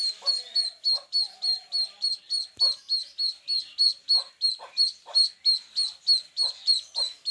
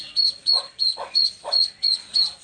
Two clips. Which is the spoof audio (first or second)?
second